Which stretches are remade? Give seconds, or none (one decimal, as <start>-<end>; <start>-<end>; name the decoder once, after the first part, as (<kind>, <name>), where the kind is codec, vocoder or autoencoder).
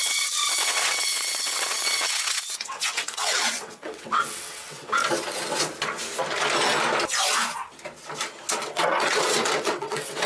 0.0-5.0 (vocoder, WaveNeXt); 8.6-10.3